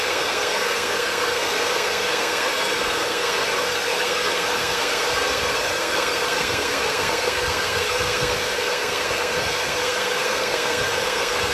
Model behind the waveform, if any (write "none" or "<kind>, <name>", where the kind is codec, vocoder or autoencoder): codec, SNAC